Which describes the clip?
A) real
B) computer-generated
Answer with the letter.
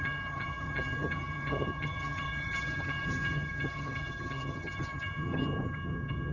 B